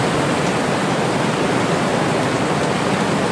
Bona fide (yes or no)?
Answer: yes